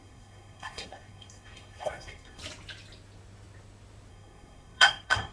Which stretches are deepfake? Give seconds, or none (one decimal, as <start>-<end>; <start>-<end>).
0.0-2.4; 4.1-5.3

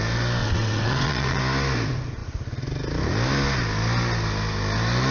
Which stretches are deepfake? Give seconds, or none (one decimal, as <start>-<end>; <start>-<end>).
0.4-1.4